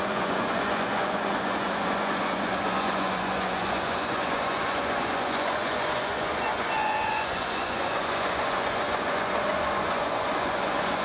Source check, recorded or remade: remade